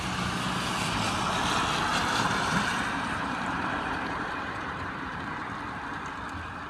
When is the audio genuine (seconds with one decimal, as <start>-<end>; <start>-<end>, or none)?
0.0-1.9; 5.4-6.7